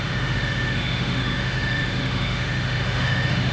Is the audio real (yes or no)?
no